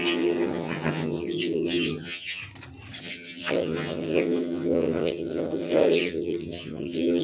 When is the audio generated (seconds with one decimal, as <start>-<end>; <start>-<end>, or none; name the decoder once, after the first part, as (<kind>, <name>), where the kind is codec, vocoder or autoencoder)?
0.0-2.4 (vocoder, HiFi-GAN); 3.0-7.2

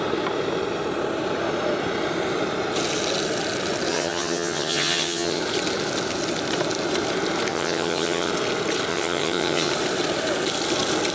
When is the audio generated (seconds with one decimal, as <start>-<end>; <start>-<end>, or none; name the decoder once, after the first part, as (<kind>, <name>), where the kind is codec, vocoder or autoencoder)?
3.9-5.4 (vocoder, HiFi-GAN); 7.5-8.3; 8.9-9.7

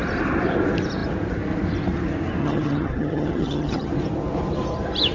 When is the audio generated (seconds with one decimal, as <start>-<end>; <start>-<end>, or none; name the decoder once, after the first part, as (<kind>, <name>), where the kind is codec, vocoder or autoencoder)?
2.4-3.9 (vocoder, HiFi-GAN)

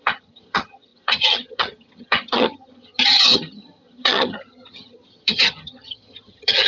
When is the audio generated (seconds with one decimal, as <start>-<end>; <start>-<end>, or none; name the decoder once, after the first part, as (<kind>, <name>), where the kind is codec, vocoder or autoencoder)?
0.0-6.7 (vocoder, HiFi-GAN)

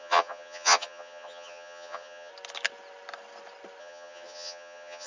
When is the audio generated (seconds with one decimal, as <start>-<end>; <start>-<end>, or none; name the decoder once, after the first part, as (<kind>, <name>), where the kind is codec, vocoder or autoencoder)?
0.0-2.3 (vocoder, HiFi-GAN); 3.8-5.1